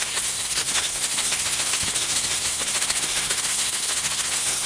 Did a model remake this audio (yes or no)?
yes